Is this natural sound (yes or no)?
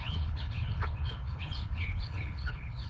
no